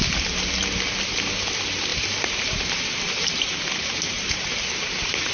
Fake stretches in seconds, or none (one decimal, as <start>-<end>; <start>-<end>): 1.9-5.3